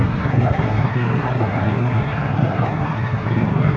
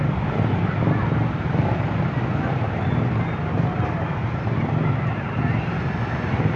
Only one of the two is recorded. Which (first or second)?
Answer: second